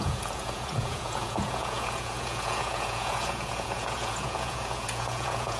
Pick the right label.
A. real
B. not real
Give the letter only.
B